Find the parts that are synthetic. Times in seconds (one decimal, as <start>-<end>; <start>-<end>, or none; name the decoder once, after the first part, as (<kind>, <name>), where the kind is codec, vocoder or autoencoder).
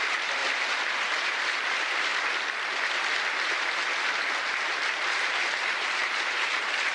0.0-0.4 (vocoder, BigVGAN v2); 1.0-2.1; 5.0-6.9